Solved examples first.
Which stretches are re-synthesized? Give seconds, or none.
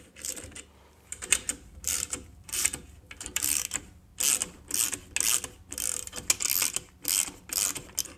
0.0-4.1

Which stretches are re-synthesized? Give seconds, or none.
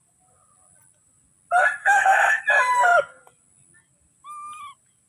1.8-2.4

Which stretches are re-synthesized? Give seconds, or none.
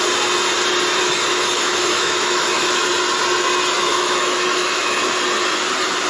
1.0-2.8; 3.9-5.0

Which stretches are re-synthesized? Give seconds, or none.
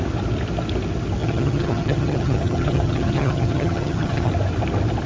1.2-4.3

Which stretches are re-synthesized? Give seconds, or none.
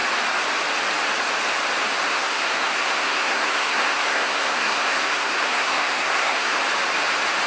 2.1-6.6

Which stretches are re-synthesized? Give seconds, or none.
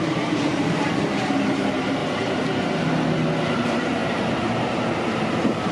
0.0-2.0; 3.5-5.7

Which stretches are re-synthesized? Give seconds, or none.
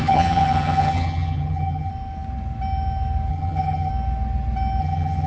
0.0-1.9; 3.3-3.9; 4.8-5.3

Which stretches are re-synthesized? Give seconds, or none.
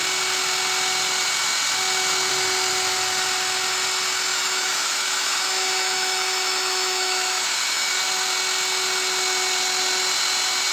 4.3-8.0